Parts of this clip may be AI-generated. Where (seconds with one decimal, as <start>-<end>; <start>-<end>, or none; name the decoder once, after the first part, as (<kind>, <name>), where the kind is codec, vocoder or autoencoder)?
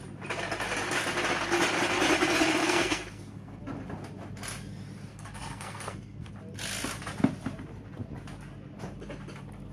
2.6-3.6 (codec, SNAC); 5.1-6.3